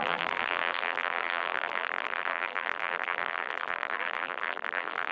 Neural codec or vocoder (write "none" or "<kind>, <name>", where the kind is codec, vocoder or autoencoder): vocoder, BigVGAN v2